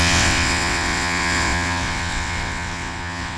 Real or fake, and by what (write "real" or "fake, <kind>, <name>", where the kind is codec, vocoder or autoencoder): fake, vocoder, WaveNeXt